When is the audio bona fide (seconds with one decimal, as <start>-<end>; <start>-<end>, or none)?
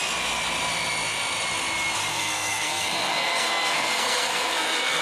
0.0-2.1